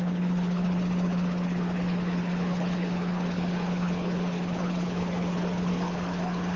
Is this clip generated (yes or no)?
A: yes